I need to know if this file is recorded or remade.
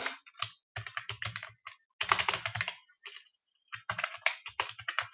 recorded